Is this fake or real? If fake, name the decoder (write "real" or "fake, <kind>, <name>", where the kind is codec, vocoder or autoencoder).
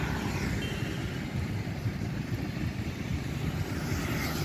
real